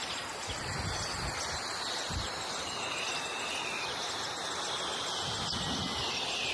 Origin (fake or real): real